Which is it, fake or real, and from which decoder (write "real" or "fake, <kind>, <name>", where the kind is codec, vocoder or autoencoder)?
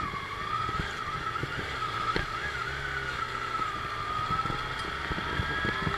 real